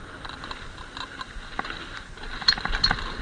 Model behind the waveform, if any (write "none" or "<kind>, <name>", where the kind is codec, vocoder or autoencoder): none